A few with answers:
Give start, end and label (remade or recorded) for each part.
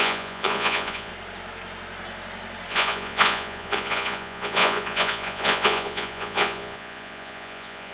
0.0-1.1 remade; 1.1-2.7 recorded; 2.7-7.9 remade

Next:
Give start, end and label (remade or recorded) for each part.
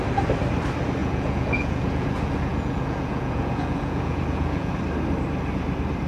0.0-1.0 recorded; 1.0-4.7 remade; 4.7-6.1 recorded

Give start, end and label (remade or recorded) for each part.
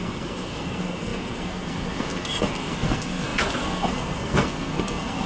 0.0-5.3 remade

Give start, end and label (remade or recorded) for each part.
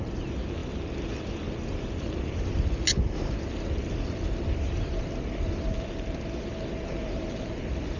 0.0-8.0 recorded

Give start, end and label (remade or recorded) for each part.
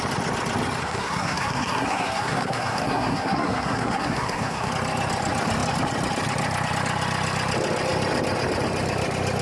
0.0-0.8 recorded; 0.8-4.7 remade; 4.7-9.4 recorded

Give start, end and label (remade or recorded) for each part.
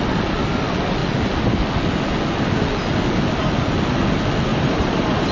0.0-4.5 recorded; 4.5-5.3 remade